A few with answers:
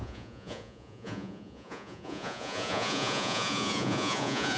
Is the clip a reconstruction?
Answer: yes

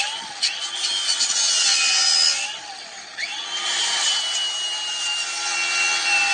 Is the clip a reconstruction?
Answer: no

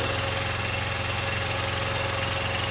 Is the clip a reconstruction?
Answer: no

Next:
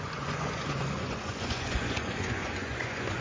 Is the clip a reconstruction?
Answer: yes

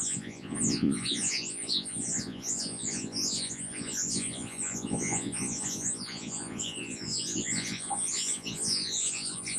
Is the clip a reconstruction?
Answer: yes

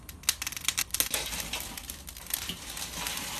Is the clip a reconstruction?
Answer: no